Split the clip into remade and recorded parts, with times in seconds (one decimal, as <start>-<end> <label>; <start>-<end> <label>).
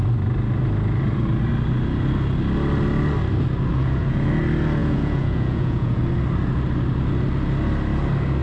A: 0.0-3.7 recorded; 3.7-4.3 remade; 4.3-4.8 recorded; 4.8-6.0 remade; 6.0-8.4 recorded